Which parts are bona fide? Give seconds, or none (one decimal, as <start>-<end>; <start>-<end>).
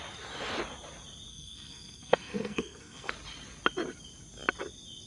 0.0-1.3; 3.1-5.1